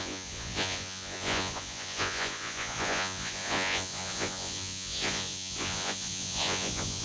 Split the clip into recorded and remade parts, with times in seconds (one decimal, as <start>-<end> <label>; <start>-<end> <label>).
0.0-7.0 remade